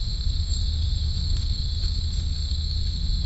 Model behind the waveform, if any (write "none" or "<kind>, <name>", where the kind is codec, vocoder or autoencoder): autoencoder, DAC-VAE